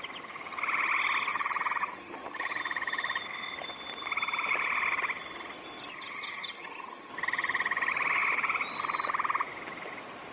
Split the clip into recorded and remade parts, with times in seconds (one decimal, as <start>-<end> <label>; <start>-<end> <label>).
0.0-1.3 recorded; 1.3-2.6 remade; 2.6-5.9 recorded; 5.9-7.1 remade; 7.1-10.3 recorded